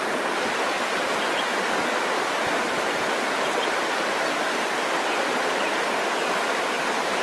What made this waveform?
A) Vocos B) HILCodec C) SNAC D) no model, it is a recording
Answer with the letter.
D